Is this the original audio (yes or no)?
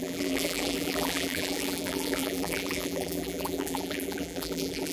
no